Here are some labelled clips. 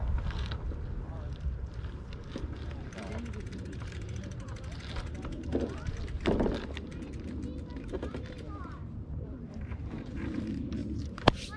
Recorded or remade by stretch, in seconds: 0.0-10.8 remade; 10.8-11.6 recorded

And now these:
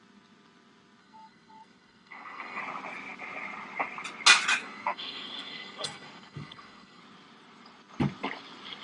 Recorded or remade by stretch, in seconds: 0.0-1.0 recorded; 1.0-2.6 remade; 2.6-4.6 recorded; 4.6-7.0 remade; 7.0-8.8 recorded

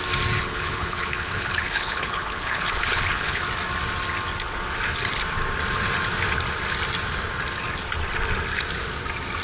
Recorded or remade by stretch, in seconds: 0.0-0.4 recorded; 0.4-3.4 remade; 3.4-9.4 recorded

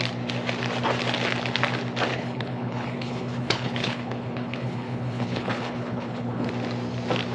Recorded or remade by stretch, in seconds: 0.0-2.1 recorded; 2.1-6.5 remade; 6.5-7.3 recorded

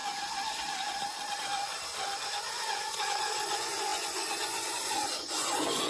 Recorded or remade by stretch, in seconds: 0.0-2.4 recorded; 2.4-5.9 remade

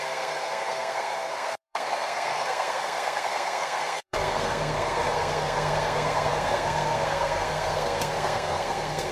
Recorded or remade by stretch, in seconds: 0.0-9.1 remade

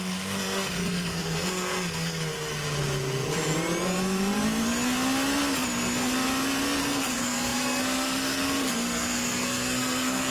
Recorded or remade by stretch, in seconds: 0.0-2.5 remade; 2.5-6.8 recorded; 6.8-10.3 remade

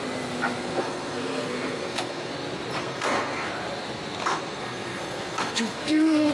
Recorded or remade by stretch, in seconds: 0.0-0.6 recorded; 0.6-2.3 remade; 2.3-2.8 recorded; 2.8-3.5 remade; 3.5-4.2 recorded; 4.2-6.3 remade